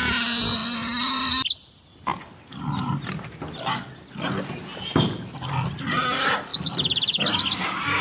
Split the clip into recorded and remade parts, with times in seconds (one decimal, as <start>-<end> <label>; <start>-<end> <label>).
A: 0.0-8.0 recorded